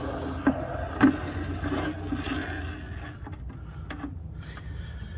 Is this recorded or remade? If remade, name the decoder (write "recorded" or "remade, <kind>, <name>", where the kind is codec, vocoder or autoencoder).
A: recorded